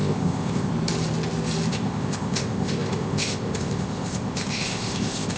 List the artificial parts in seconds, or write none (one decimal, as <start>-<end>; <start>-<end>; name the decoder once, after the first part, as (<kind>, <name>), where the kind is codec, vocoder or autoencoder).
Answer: 0.0-0.7 (codec, ZipCodec); 1.7-5.4

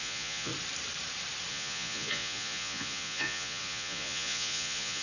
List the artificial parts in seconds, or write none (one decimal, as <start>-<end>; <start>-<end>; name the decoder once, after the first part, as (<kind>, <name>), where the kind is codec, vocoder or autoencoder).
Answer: 0.0-0.5 (vocoder, Vocos); 1.5-5.0

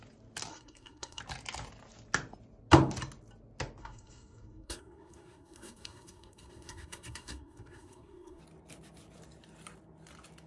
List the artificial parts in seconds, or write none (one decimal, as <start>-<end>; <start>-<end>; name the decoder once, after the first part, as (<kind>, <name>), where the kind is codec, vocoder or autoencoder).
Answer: 0.5-1.2 (codec, SNAC); 3.8-8.4

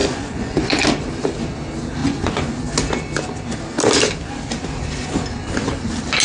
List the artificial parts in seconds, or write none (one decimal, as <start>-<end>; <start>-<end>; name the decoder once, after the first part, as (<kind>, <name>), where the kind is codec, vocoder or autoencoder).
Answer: 0.0-0.8 (vocoder, Vocos); 2.0-2.6

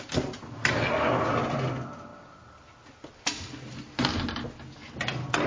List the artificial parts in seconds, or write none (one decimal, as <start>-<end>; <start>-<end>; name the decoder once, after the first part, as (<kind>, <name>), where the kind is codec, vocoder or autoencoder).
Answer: none